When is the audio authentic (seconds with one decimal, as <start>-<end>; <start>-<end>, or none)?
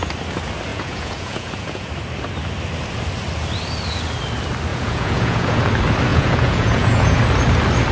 0.0-0.7; 1.9-4.7; 5.6-6.1; 7.2-7.9